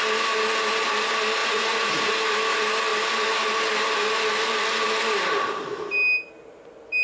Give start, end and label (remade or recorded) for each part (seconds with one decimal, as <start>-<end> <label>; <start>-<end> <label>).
0.0-1.4 recorded; 1.4-2.1 remade; 2.1-7.0 recorded